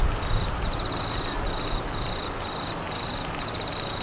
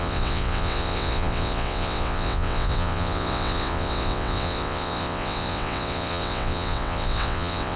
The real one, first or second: first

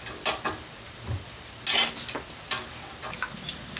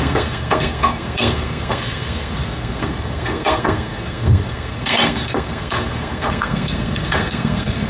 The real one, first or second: first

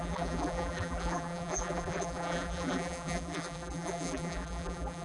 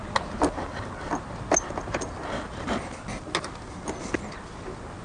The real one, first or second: second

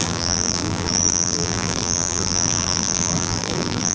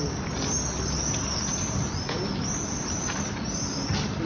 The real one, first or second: second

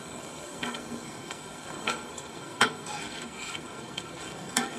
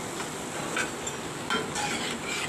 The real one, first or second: second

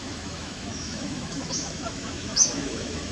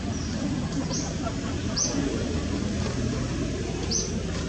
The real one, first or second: second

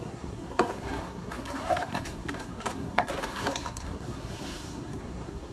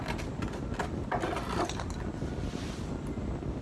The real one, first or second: second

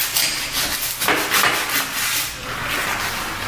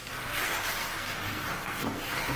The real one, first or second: first